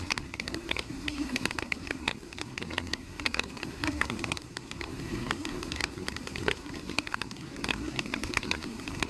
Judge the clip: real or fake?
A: fake